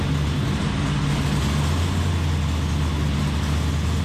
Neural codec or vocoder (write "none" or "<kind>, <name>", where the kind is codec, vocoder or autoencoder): none